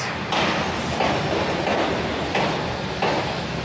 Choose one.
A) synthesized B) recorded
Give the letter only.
B